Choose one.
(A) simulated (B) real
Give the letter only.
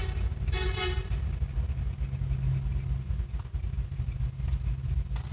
B